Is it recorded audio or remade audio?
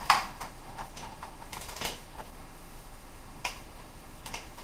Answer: remade